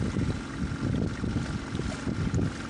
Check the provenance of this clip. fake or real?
real